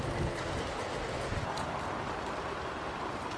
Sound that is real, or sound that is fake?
real